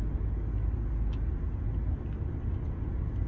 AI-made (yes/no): no